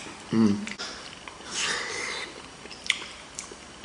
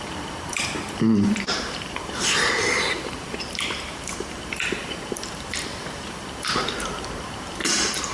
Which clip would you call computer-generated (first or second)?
second